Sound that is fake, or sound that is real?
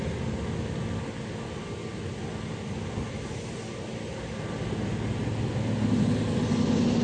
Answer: real